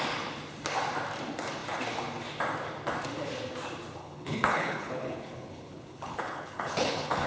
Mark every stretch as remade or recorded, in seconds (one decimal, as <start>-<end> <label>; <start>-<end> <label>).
0.0-4.0 recorded; 4.0-7.3 remade